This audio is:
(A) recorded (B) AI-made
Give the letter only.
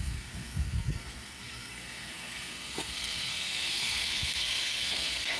B